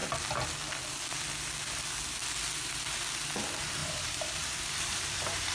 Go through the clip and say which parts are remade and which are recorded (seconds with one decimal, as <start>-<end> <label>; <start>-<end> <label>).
0.0-3.8 recorded; 3.8-5.5 remade